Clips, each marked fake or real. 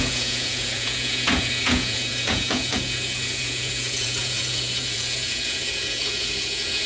fake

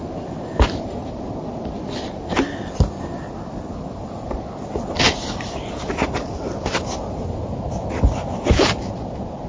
real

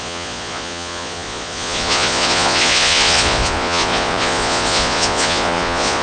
fake